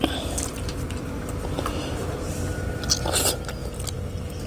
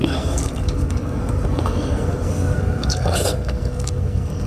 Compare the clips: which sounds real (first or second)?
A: first